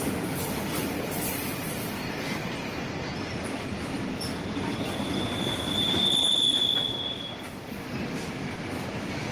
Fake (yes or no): yes